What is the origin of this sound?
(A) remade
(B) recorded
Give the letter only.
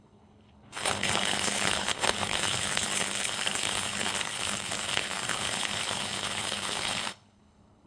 A